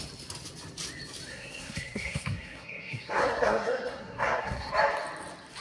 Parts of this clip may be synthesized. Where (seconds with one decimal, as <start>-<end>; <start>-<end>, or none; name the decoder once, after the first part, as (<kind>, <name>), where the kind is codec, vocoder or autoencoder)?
1.3-4.7 (codec, SNAC)